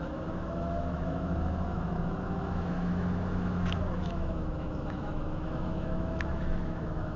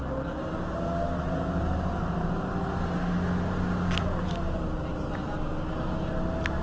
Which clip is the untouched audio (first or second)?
second